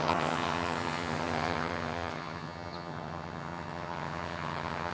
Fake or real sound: fake